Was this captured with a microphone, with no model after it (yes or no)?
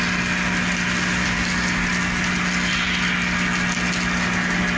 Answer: yes